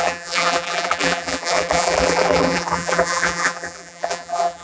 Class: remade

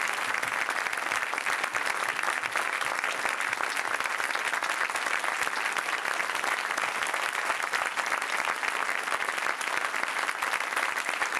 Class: recorded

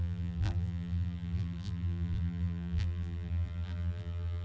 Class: remade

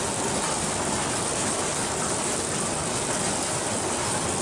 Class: recorded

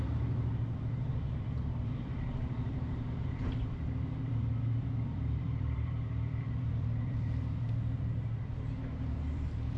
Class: remade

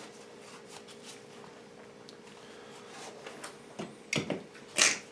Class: recorded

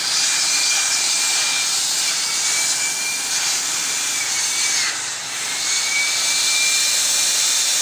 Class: remade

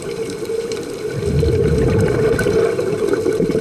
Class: remade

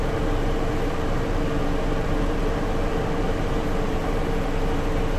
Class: remade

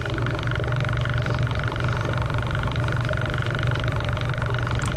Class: remade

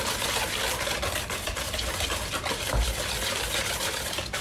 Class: remade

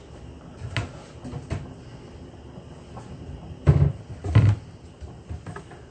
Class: recorded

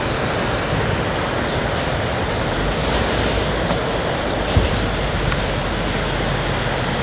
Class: recorded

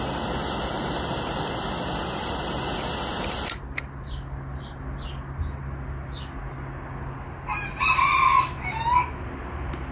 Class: recorded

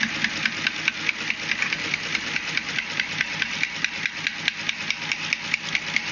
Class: recorded